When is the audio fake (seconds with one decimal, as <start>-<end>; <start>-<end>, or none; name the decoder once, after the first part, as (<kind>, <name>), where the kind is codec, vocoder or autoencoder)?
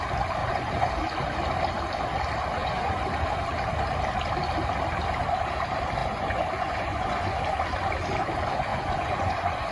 0.4-0.9 (vocoder, Vocos); 2.6-3.3; 6.0-7.4; 8.7-9.7